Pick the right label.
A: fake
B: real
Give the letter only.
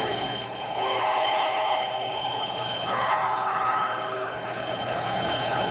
A